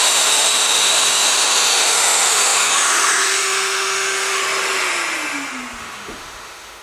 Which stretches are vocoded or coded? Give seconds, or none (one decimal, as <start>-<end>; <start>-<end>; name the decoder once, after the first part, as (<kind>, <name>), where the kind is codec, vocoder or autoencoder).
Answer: 0.0-4.4 (autoencoder, DAC-VAE); 5.8-6.8